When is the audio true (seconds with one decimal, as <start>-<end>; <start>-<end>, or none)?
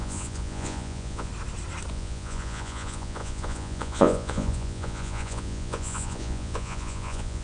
1.3-1.9